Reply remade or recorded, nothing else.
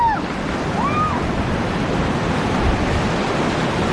recorded